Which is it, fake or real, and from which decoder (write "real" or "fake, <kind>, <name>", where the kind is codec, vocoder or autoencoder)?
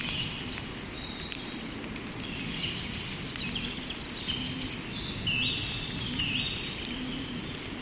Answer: real